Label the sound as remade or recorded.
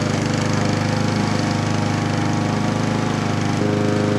recorded